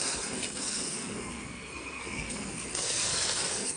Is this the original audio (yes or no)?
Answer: no